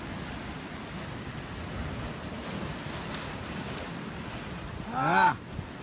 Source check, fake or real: real